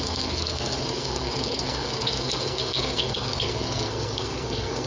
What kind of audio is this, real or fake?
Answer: fake